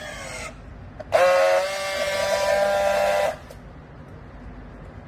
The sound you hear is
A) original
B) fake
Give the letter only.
A